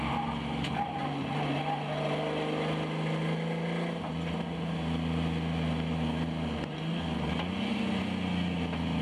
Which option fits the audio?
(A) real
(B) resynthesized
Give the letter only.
A